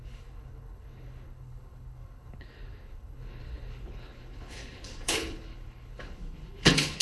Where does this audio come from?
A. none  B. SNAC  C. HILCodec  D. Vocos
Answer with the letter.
C